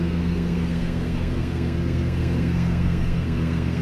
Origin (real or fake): fake